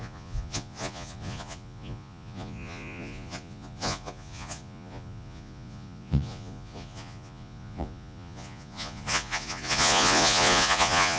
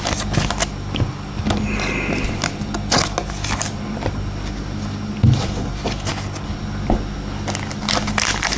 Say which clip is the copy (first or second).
first